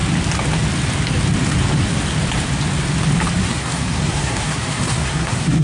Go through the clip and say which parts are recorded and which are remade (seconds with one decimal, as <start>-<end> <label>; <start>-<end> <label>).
0.0-3.4 recorded; 3.4-5.6 remade